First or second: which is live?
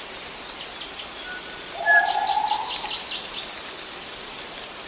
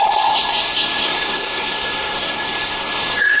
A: first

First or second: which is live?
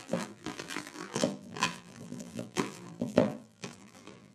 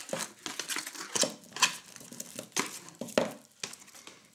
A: second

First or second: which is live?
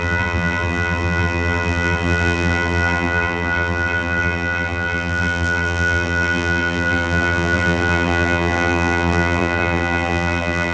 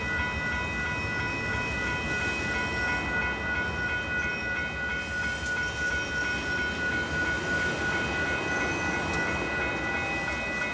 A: second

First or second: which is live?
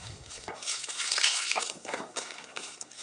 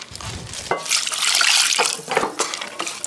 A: second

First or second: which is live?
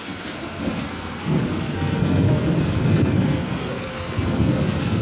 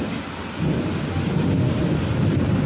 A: second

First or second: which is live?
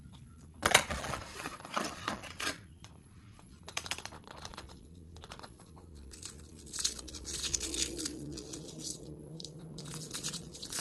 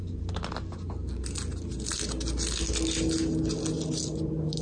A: second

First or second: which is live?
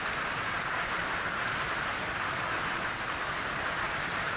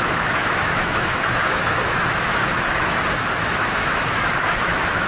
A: first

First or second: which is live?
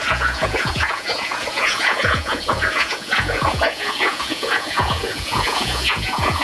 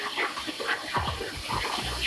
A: second